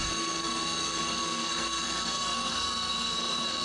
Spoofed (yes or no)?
yes